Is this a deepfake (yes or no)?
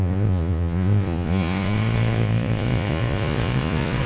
yes